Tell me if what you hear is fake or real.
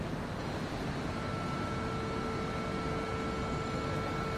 real